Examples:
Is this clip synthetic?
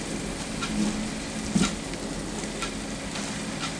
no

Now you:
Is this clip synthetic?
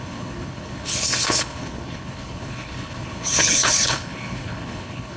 yes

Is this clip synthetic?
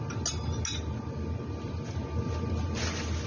no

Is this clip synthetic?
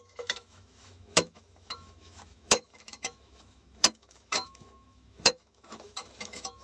yes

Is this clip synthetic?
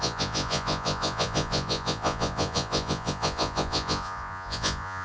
yes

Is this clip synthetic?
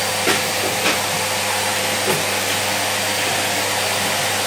yes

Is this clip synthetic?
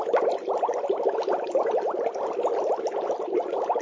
no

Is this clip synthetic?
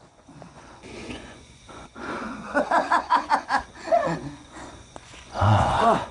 yes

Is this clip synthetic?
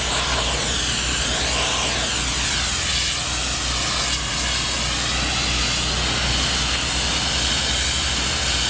no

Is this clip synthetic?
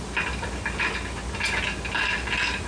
no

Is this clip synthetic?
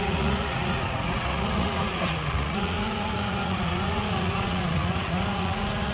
yes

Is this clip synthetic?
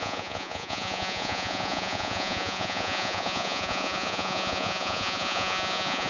yes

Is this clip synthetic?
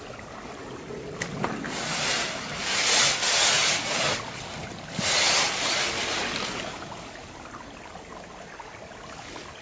no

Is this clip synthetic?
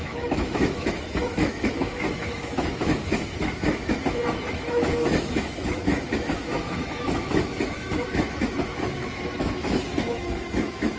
yes